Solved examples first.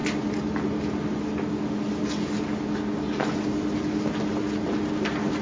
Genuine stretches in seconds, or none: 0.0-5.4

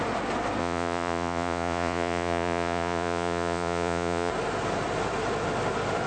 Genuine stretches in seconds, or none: 0.0-0.6; 4.3-6.1

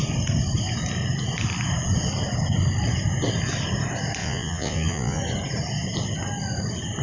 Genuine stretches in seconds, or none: 0.0-4.2; 5.2-7.0

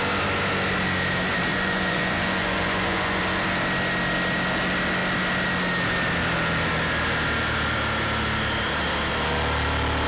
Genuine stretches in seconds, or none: 0.0-1.5; 3.2-10.1

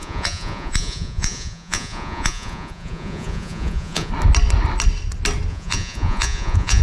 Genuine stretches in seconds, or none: 4.1-5.5

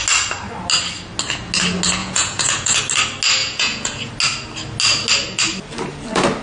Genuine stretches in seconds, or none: 0.0-2.0; 2.8-3.4; 4.1-6.4

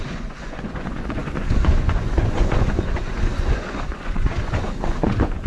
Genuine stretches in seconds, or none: none